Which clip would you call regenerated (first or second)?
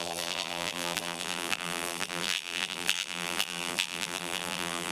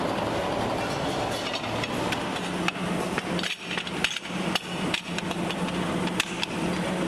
first